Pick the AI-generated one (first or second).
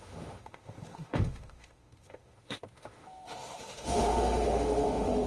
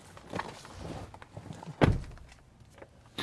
first